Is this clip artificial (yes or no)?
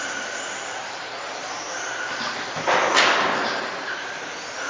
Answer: no